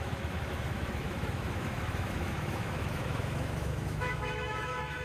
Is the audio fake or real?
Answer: fake